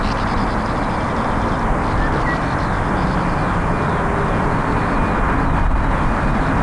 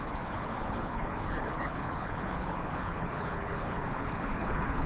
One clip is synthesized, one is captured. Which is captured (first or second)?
first